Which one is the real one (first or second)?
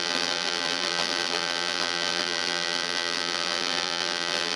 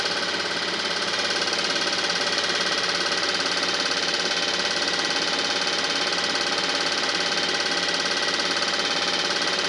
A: second